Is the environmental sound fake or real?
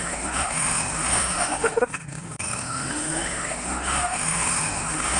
fake